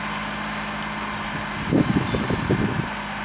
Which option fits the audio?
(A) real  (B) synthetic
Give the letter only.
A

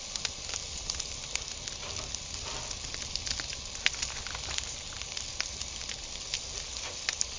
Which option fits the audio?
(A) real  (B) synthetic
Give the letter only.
A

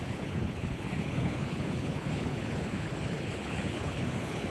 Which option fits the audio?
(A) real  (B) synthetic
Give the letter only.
B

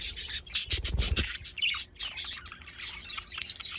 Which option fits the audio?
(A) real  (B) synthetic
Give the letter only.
A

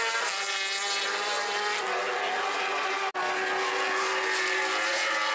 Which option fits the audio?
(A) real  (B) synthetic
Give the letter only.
A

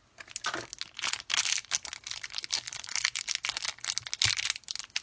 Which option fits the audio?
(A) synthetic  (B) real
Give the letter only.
B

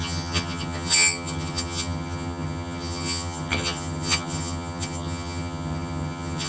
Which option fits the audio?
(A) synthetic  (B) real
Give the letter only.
A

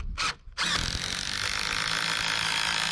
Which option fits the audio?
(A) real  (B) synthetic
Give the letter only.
A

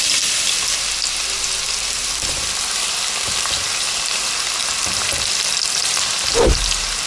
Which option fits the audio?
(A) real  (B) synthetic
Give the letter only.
A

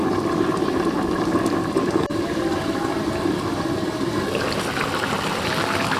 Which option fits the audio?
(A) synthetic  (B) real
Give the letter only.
B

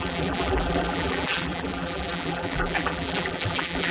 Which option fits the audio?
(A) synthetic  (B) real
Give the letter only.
A